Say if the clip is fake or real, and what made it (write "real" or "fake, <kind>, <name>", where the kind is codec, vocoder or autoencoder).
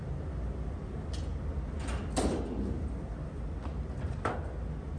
real